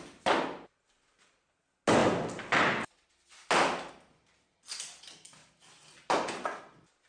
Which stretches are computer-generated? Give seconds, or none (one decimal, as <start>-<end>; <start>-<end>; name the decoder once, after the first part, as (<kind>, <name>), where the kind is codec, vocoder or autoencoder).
none